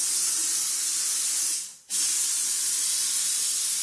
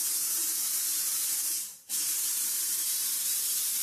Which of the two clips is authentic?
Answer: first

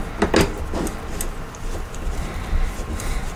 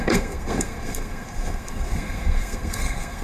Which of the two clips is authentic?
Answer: first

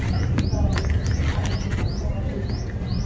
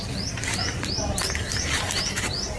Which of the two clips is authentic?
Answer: first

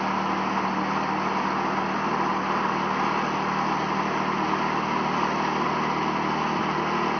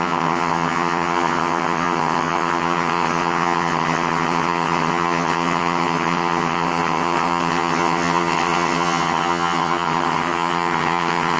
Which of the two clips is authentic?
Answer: first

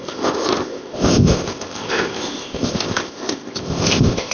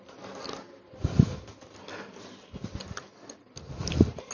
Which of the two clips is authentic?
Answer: second